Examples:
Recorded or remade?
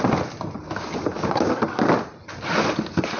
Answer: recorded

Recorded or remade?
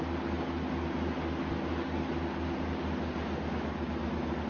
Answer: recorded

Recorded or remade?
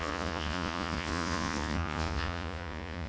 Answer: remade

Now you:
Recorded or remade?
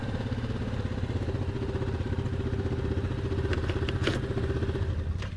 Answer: recorded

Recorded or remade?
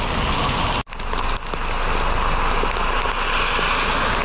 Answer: recorded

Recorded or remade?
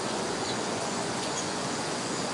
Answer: remade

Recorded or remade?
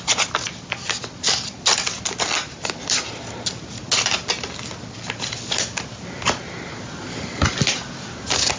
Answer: recorded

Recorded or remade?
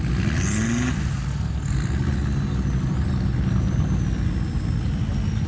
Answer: recorded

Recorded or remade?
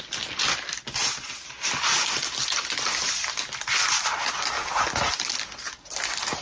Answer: recorded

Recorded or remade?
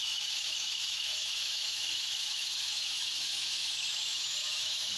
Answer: remade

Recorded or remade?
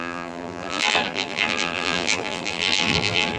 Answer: remade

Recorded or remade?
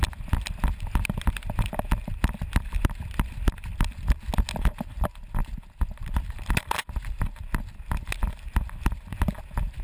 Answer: recorded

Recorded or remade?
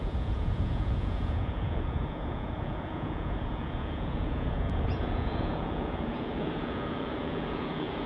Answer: remade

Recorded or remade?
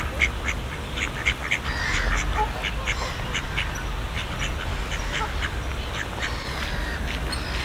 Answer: recorded